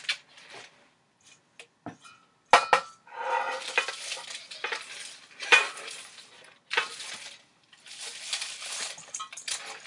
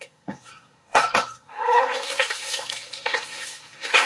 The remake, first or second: second